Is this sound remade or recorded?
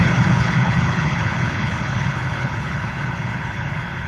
remade